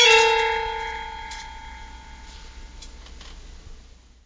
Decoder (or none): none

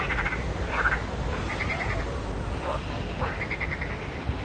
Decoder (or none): none